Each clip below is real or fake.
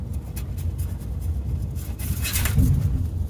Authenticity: real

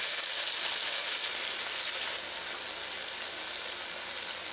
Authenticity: real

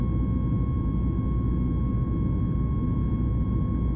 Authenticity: real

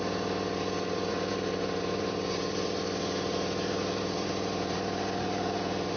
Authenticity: fake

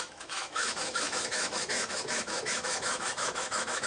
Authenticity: fake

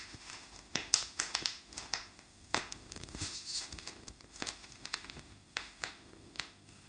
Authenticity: fake